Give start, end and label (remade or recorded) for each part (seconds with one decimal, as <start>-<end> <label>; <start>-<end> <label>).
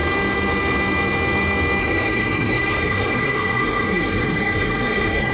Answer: 0.0-1.8 recorded; 1.8-5.3 remade